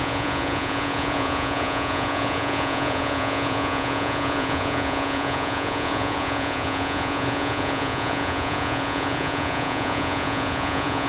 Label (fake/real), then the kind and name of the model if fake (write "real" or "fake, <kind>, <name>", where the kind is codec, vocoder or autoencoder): fake, vocoder, Vocos